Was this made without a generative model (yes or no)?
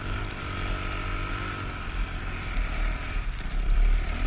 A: no